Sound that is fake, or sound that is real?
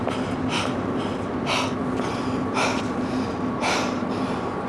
real